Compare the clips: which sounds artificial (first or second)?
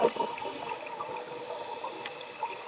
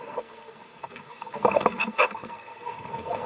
second